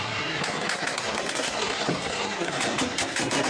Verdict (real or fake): fake